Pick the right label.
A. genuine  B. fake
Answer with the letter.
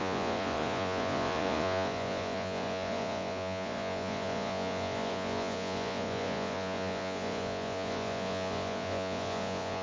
B